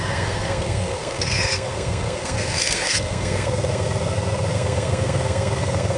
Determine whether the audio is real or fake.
fake